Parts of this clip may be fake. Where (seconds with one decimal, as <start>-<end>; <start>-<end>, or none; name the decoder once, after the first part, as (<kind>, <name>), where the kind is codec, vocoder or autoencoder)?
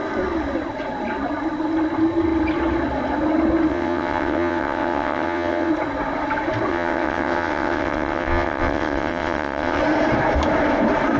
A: 3.7-5.7 (vocoder, WaveNeXt); 6.7-9.8